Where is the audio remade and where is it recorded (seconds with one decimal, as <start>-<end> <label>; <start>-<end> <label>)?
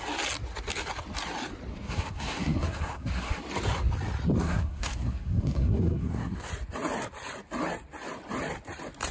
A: 0.0-1.7 recorded; 1.7-3.4 remade; 3.4-4.4 recorded; 4.4-6.5 remade; 6.5-9.1 recorded